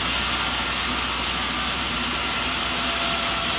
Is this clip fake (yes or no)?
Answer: no